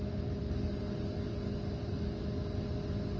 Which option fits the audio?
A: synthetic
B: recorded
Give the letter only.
B